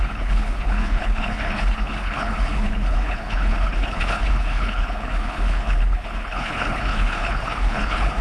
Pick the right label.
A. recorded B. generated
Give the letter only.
B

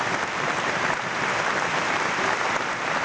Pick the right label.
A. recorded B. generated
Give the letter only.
A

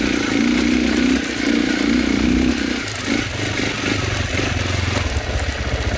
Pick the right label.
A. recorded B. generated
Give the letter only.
A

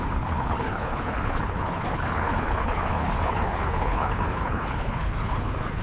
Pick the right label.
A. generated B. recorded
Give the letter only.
A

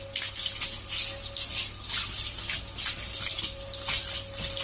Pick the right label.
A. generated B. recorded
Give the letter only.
B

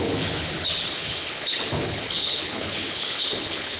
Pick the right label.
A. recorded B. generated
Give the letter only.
B